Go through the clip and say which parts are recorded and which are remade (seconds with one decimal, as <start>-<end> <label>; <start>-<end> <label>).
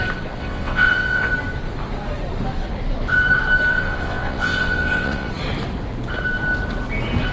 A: 0.0-0.4 recorded; 0.4-1.3 remade; 1.3-3.7 recorded; 3.7-5.3 remade; 5.3-7.3 recorded